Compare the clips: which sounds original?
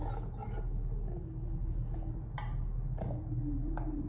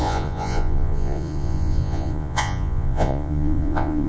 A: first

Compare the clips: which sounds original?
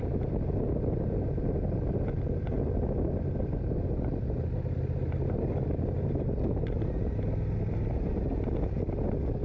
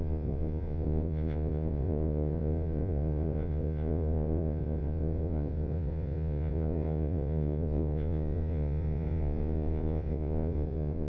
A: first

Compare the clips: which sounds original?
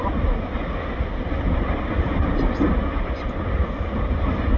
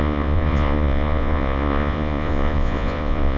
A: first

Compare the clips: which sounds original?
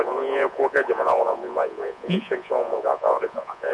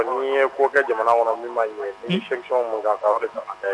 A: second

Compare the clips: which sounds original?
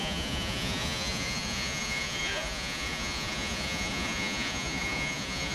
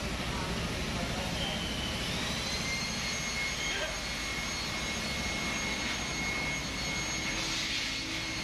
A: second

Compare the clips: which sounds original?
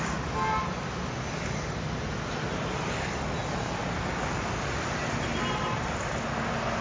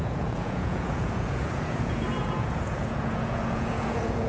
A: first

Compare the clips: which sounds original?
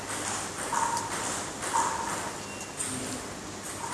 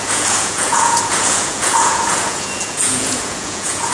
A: first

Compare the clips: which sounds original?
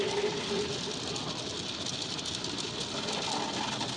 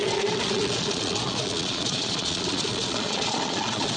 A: first